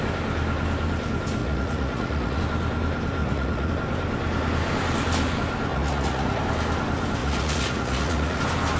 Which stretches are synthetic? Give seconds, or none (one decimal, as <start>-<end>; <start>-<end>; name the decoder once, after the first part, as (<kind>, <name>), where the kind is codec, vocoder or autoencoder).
1.4-2.4 (vocoder, Vocos); 3.2-3.7; 5.7-6.4; 7.2-8.4